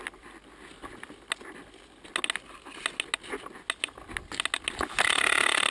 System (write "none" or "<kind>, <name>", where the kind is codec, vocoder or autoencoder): none